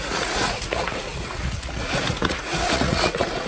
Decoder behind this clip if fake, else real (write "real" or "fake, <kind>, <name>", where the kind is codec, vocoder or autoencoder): fake, vocoder, Vocos